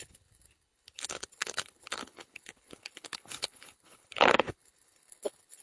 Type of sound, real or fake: fake